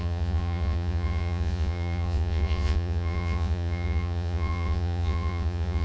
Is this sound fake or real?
fake